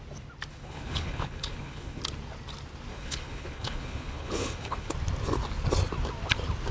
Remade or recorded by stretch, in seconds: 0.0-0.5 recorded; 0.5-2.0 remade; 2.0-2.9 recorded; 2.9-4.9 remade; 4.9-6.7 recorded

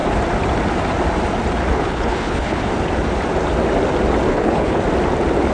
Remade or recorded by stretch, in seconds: 0.0-1.7 recorded; 1.7-2.7 remade; 2.7-4.3 recorded; 4.3-4.8 remade; 4.8-5.5 recorded

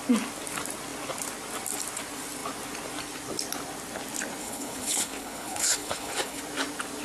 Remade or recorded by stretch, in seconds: 0.0-4.4 recorded; 4.4-6.4 remade; 6.4-7.0 recorded

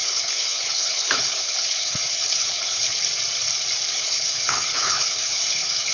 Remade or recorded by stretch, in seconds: 0.0-3.0 remade; 3.0-3.9 recorded; 3.9-5.9 remade

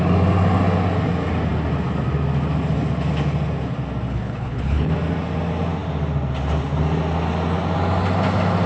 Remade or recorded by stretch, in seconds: 0.0-4.1 recorded; 4.1-4.9 remade; 4.9-8.7 recorded

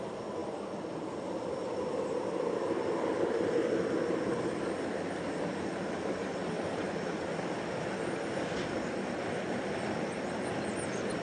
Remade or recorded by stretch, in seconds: 0.0-11.2 recorded

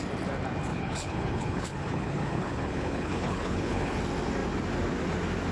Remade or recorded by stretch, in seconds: 0.0-0.7 recorded; 0.7-4.0 remade; 4.0-5.5 recorded

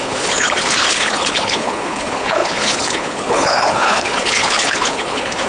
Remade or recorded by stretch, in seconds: 0.0-5.5 remade